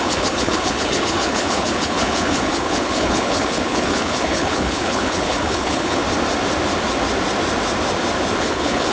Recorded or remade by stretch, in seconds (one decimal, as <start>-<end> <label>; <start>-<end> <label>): 0.0-6.0 remade; 6.0-8.4 recorded; 8.4-8.9 remade